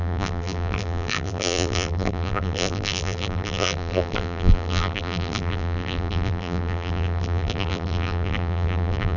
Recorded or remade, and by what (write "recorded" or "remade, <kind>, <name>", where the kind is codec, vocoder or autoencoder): remade, vocoder, BigVGAN v2